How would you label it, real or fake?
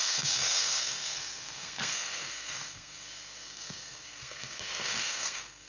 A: fake